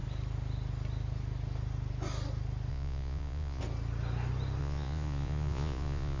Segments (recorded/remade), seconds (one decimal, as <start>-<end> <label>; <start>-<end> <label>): 0.0-2.7 recorded; 2.7-3.6 remade; 3.6-4.6 recorded; 4.6-6.2 remade